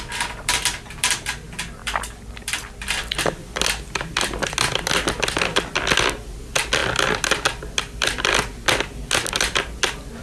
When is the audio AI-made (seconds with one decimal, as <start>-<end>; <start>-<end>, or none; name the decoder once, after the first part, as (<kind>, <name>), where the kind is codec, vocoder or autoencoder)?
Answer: none